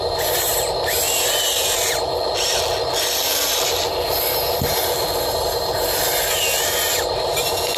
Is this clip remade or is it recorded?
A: recorded